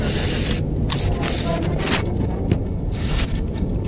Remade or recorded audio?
recorded